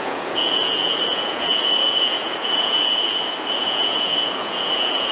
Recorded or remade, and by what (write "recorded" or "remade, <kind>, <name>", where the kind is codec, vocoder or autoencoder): remade, vocoder, Vocos